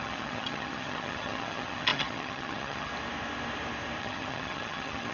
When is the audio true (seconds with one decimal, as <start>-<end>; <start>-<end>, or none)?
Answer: 2.9-4.0